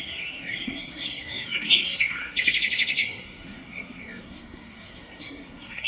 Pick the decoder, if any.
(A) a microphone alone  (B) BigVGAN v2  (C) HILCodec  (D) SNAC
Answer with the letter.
D